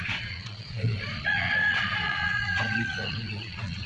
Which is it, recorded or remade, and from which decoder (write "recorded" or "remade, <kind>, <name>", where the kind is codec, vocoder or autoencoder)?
remade, vocoder, Vocos